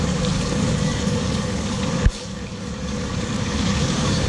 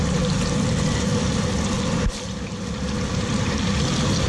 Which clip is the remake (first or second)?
first